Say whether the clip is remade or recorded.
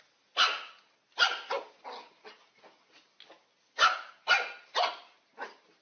recorded